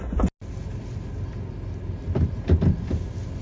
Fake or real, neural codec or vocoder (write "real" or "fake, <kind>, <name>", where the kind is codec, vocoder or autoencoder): real